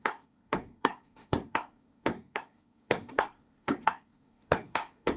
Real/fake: fake